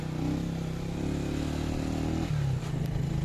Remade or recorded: recorded